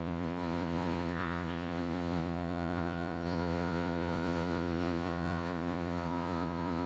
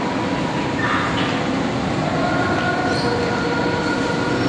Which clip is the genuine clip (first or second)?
second